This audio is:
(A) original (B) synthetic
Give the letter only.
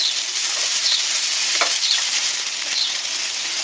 B